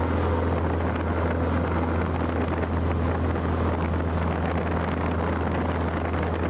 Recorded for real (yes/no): yes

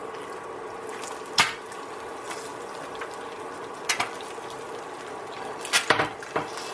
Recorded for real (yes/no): yes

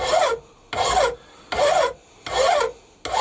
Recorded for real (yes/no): yes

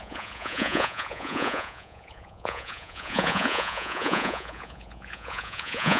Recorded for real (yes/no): no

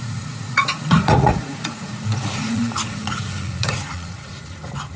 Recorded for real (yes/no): no